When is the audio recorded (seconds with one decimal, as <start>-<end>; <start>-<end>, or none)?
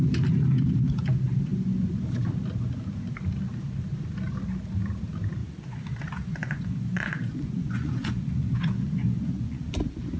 0.0-5.4; 9.7-10.2